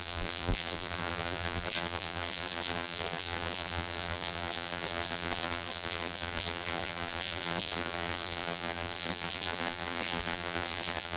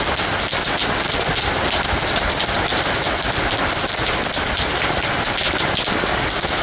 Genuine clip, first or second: second